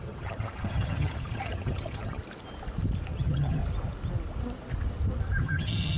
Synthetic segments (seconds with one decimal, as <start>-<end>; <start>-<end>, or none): 0.0-2.2; 3.1-3.6; 5.4-6.0